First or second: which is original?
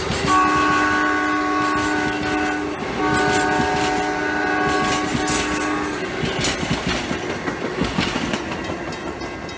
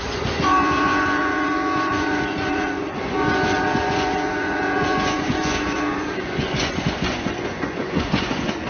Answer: first